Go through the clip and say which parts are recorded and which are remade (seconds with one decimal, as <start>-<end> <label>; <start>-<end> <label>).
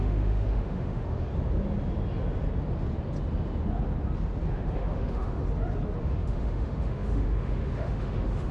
0.0-1.3 remade; 1.3-4.5 recorded; 4.5-5.4 remade; 5.4-6.0 recorded; 6.0-8.5 remade